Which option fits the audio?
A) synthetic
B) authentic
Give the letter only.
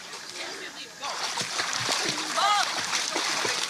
A